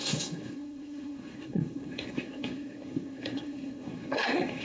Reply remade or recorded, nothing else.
remade